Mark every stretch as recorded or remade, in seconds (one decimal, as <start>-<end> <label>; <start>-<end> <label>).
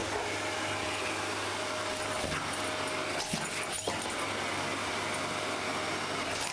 0.0-6.5 recorded